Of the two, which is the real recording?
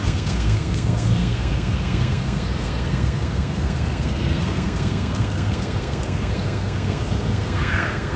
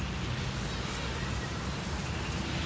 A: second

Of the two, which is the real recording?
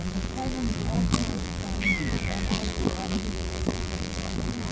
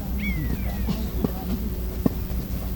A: second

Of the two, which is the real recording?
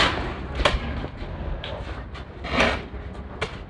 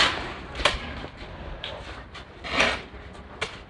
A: first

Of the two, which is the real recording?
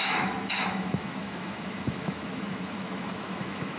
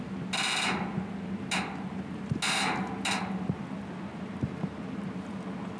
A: second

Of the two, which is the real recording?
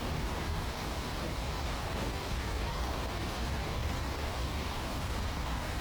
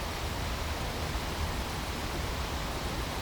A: second